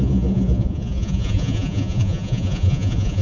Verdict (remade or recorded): remade